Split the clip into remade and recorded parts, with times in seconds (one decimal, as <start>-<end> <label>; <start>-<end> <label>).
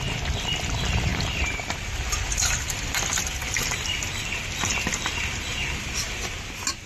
0.0-1.1 recorded; 1.1-4.1 remade; 4.1-6.9 recorded